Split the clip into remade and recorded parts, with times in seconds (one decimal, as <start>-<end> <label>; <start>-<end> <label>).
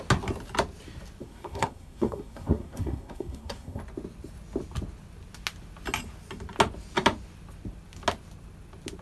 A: 0.0-1.2 recorded; 1.2-3.8 remade; 3.8-9.0 recorded